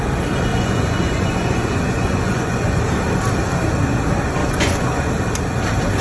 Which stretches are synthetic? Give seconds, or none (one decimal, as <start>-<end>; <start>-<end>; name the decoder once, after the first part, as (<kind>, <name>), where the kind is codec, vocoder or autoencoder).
0.5-2.8 (vocoder, Vocos); 4.4-5.1